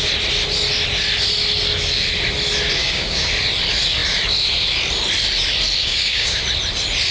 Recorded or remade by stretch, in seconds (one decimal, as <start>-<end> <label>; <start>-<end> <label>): 0.0-2.8 recorded; 2.8-3.3 remade; 3.3-5.8 recorded; 5.8-6.4 remade; 6.4-7.1 recorded